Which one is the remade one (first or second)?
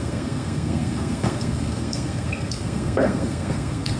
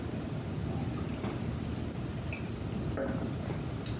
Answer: first